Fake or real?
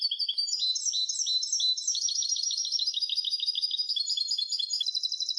real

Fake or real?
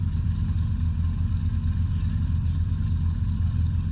real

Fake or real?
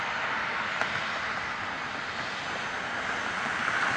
real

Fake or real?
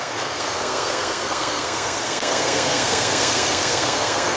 fake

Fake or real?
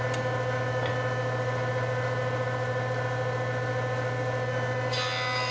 real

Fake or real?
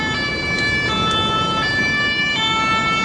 real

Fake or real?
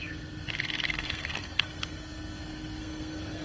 fake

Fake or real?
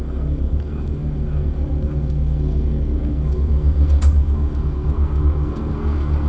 fake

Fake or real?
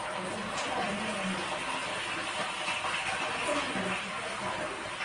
real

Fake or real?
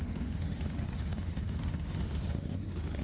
fake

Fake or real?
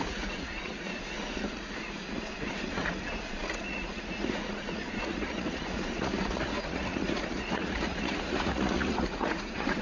fake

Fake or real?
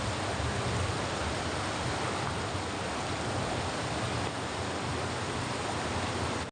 real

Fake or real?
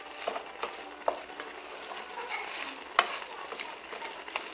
real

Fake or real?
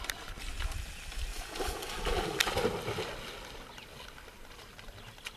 real